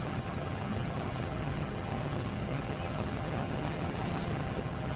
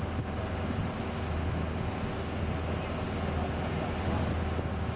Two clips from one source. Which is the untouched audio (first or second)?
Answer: second